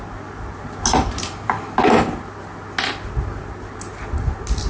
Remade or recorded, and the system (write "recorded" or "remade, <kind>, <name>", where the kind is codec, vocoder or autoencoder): recorded